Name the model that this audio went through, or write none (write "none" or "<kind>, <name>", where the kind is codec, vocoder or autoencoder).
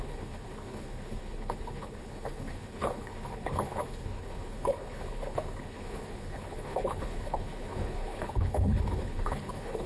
codec, HILCodec